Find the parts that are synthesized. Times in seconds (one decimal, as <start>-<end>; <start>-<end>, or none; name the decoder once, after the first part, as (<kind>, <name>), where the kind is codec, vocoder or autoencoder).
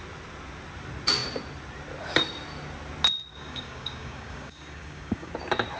3.3-5.3 (codec, DAC)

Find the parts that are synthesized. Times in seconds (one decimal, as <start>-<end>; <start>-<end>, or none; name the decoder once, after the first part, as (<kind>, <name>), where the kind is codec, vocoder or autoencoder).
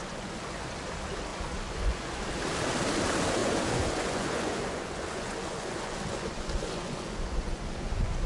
0.0-0.8 (vocoder, Vocos); 1.3-2.2; 3.4-8.3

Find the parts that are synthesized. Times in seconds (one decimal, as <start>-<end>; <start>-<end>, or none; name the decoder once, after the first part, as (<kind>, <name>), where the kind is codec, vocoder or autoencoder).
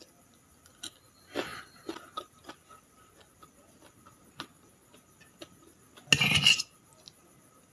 1.5-3.0 (vocoder, BigVGAN v2)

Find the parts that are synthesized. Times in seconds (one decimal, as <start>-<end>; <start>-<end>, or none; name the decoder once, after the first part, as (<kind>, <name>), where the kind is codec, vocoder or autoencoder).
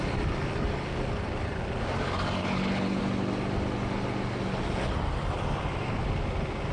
2.4-3.0 (codec, HILCodec)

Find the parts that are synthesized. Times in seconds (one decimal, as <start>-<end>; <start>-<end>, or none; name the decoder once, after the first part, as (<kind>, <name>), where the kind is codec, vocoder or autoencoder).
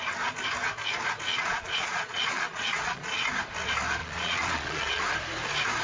1.3-3.3 (vocoder, Vocos); 4.0-5.0